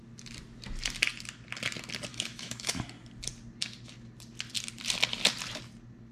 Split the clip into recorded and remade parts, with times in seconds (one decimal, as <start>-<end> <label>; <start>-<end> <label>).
0.0-2.1 recorded; 2.1-2.8 remade; 2.8-6.1 recorded